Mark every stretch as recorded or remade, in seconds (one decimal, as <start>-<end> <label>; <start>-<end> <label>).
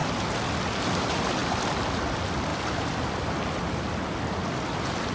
0.0-5.1 recorded